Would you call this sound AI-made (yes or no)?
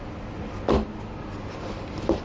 no